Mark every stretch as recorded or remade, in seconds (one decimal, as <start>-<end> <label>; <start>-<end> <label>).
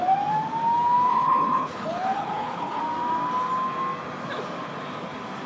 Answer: 0.0-1.1 recorded; 1.1-2.8 remade; 2.8-5.5 recorded